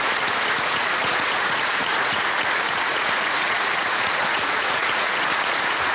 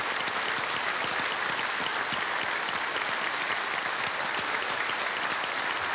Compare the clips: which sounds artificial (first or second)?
first